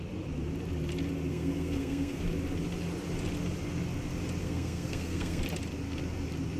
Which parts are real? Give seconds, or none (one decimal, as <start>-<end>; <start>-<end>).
0.0-1.3; 2.2-4.4; 5.4-6.6